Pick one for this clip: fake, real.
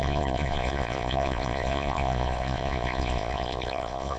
fake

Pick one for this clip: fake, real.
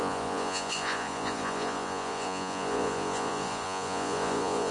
fake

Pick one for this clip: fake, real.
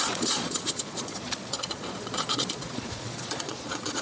fake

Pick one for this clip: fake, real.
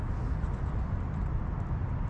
real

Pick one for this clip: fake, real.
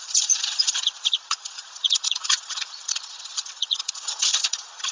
fake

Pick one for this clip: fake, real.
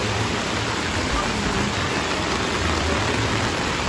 real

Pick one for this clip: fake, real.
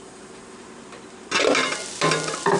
real